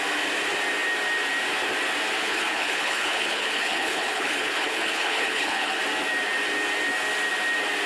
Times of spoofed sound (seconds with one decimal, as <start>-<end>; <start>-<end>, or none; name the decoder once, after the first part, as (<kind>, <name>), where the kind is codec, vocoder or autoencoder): 2.2-5.8 (codec, HILCodec)